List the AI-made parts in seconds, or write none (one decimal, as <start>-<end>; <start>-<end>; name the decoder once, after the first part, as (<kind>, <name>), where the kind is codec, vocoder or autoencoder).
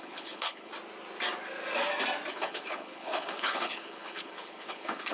0.0-0.7 (codec, HILCodec); 2.3-5.1